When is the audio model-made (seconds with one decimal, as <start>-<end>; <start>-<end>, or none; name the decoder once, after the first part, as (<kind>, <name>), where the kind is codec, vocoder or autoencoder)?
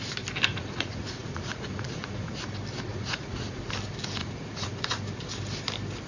0.5-2.3 (vocoder, Vocos); 2.9-3.6; 4.2-4.8